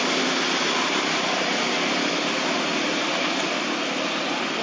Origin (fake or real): real